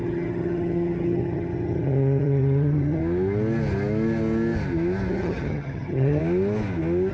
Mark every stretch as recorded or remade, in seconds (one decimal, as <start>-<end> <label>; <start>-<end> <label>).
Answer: 0.0-3.0 remade; 3.0-5.1 recorded; 5.1-6.2 remade; 6.2-7.1 recorded